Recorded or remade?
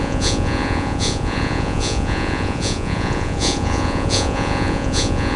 remade